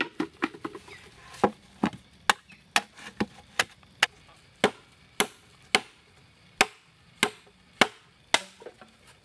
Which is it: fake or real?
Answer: real